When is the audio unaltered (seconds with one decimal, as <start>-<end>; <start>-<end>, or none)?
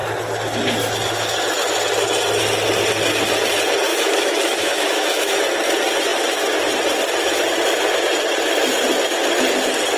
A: 0.0-3.9; 5.4-10.0